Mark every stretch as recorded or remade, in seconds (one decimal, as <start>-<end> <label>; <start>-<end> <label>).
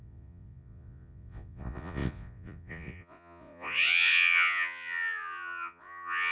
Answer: 0.0-6.3 remade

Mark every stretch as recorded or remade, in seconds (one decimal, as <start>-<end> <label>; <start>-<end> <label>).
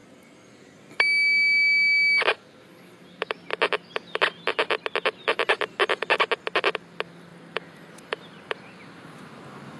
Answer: 0.0-7.3 recorded; 7.3-9.4 remade; 9.4-9.8 recorded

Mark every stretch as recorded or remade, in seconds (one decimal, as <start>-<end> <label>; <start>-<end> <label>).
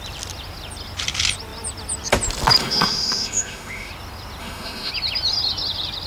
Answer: 0.0-2.6 recorded; 2.6-3.9 remade; 3.9-4.4 recorded; 4.4-4.9 remade; 4.9-6.1 recorded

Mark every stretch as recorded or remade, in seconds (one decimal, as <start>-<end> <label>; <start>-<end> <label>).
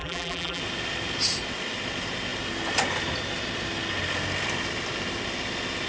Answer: 0.0-0.6 remade; 0.6-5.9 recorded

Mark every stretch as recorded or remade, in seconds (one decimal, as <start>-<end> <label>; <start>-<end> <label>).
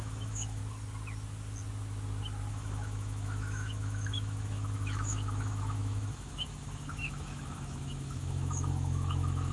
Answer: 0.0-0.6 remade; 0.6-2.5 recorded; 2.5-9.5 remade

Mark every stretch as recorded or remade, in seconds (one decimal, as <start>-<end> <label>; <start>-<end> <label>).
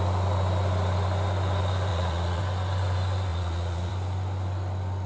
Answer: 0.0-1.9 recorded; 1.9-2.4 remade; 2.4-3.3 recorded; 3.3-3.9 remade; 3.9-5.1 recorded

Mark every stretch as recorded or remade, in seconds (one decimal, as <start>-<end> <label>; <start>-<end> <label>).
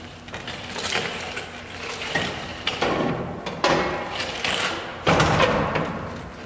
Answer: 0.0-2.5 recorded; 2.5-3.1 remade; 3.1-4.9 recorded; 4.9-6.1 remade; 6.1-6.5 recorded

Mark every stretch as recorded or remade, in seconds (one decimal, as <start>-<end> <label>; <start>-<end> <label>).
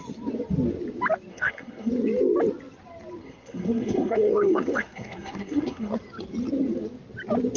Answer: 0.0-1.3 recorded; 1.3-1.9 remade; 1.9-3.2 recorded; 3.2-5.9 remade; 5.9-7.6 recorded